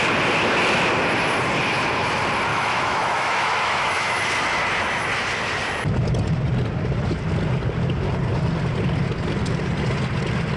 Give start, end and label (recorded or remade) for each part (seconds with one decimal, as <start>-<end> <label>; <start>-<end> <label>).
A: 0.0-2.5 recorded; 2.5-4.2 remade; 4.2-10.6 recorded